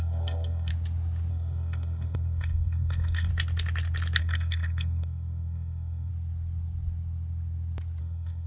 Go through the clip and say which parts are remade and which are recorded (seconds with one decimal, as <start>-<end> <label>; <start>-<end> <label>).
0.0-0.7 remade; 0.7-1.3 recorded; 1.3-3.3 remade; 3.3-4.2 recorded; 4.2-6.1 remade; 6.1-8.0 recorded; 8.0-8.5 remade

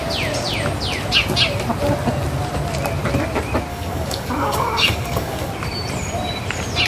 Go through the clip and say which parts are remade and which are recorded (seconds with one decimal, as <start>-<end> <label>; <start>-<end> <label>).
0.0-3.7 recorded; 3.7-5.5 remade; 5.5-6.9 recorded

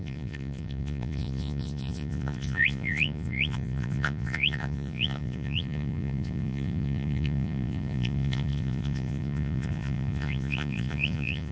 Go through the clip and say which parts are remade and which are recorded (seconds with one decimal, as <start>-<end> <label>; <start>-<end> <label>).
0.0-11.5 remade

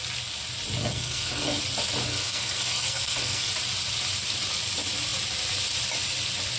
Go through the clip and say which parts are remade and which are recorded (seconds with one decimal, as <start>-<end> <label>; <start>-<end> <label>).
0.0-0.8 recorded; 0.8-1.6 remade; 1.6-2.1 recorded; 2.1-3.5 remade; 3.5-6.6 recorded

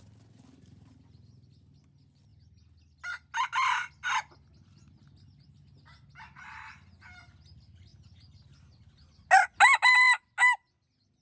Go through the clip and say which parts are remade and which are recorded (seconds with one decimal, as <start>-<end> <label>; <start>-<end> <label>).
0.0-11.2 recorded

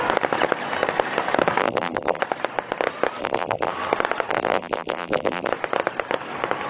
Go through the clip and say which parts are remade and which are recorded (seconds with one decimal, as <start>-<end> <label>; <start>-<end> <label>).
0.0-1.6 recorded; 1.6-2.2 remade; 2.2-3.2 recorded; 3.2-3.7 remade; 3.7-4.3 recorded; 4.3-5.5 remade; 5.5-6.7 recorded

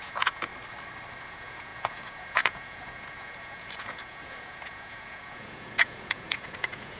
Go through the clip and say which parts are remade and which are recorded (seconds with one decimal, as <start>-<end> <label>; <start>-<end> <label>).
0.0-0.5 remade; 0.5-1.2 recorded; 1.2-7.0 remade

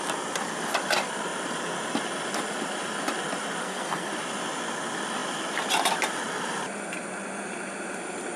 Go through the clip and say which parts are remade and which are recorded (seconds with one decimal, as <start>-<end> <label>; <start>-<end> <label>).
0.0-3.6 recorded; 3.6-4.1 remade; 4.1-8.4 recorded